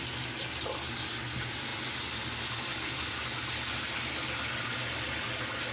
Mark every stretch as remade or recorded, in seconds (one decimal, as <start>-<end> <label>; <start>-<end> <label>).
0.0-5.7 recorded

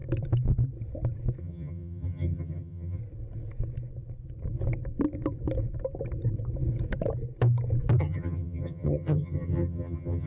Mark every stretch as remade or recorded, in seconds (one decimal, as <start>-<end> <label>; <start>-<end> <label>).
0.0-1.4 recorded; 1.4-3.0 remade; 3.0-8.0 recorded; 8.0-10.3 remade

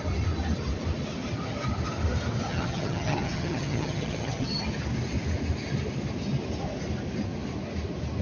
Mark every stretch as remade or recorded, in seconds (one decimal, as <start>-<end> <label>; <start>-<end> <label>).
0.0-2.5 recorded; 2.5-4.6 remade; 4.6-8.2 recorded

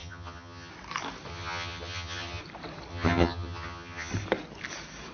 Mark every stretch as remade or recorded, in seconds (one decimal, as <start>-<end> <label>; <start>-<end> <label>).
0.0-0.7 remade; 0.7-1.3 recorded; 1.3-2.4 remade; 2.4-2.9 recorded; 2.9-4.1 remade; 4.1-5.1 recorded